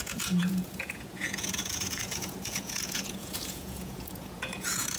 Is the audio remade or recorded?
remade